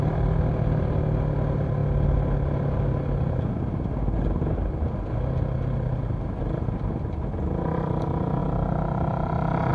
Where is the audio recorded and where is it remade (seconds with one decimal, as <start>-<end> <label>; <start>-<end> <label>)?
0.0-9.7 recorded